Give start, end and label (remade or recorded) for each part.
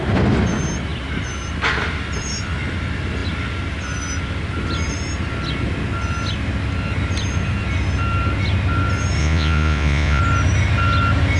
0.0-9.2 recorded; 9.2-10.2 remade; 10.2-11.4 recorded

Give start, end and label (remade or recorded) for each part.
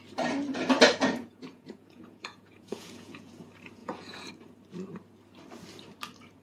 0.0-1.2 recorded; 1.2-3.3 remade; 3.3-3.8 recorded; 3.8-4.3 remade; 4.3-6.4 recorded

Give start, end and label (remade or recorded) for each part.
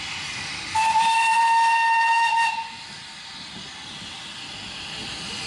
0.0-5.5 recorded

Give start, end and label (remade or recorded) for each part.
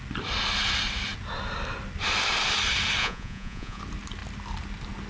0.0-3.0 recorded; 3.0-3.8 remade; 3.8-5.1 recorded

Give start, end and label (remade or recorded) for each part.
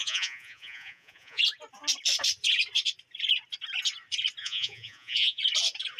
0.0-1.4 remade; 1.4-4.4 recorded; 4.4-5.4 remade; 5.4-6.0 recorded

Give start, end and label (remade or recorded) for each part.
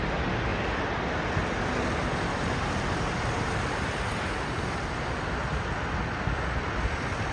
0.0-7.3 recorded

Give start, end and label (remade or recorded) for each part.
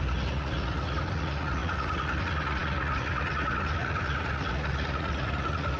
0.0-5.8 remade